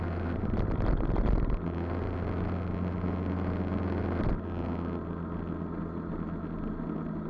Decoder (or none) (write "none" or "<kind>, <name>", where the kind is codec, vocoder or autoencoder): none